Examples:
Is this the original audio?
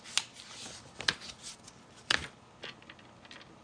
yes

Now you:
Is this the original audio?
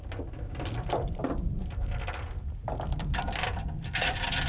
yes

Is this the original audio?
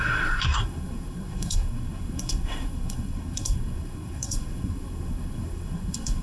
no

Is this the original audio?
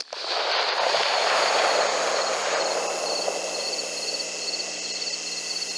yes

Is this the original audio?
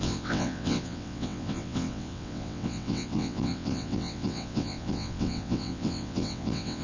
no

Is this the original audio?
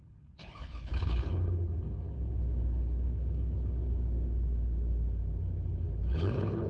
no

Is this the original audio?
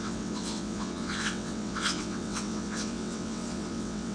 no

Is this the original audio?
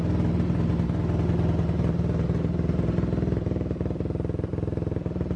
yes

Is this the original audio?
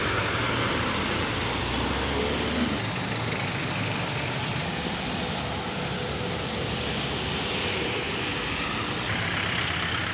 yes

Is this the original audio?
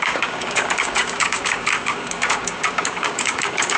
no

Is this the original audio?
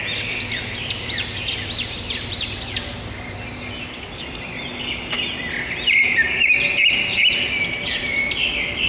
yes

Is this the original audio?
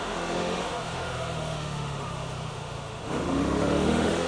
no